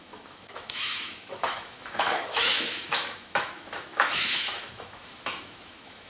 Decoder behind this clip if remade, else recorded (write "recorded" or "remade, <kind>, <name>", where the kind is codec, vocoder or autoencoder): remade, autoencoder, DAC-VAE